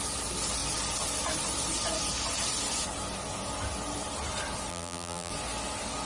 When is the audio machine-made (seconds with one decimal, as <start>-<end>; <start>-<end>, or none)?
4.7-5.3